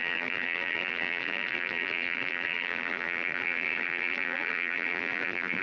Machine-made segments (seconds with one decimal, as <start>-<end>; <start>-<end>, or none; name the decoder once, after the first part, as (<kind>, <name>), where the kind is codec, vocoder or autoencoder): 0.0-5.6 (vocoder, BigVGAN v2)